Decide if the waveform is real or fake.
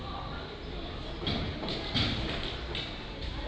real